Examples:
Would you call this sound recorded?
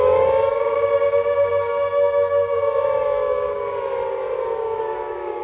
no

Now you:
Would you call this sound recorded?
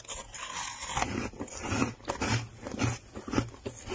yes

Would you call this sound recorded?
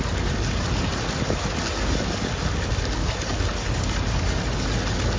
yes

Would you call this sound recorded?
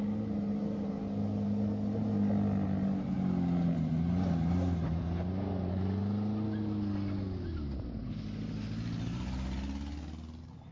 yes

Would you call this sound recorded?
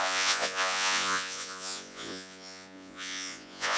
no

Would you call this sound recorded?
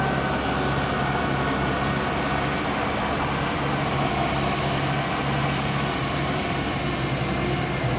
yes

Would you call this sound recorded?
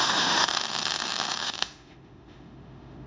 no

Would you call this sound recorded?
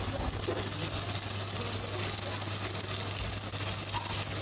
yes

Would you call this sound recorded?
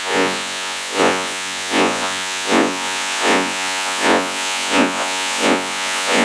no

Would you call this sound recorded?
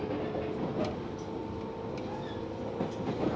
yes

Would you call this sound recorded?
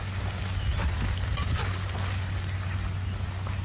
yes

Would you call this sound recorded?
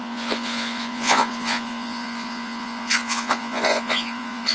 no